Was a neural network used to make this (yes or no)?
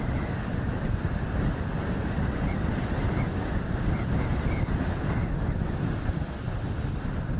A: no